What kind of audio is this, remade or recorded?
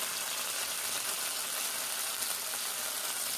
recorded